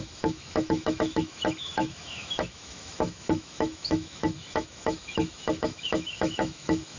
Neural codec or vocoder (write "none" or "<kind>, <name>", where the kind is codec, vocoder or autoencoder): autoencoder, DAC-VAE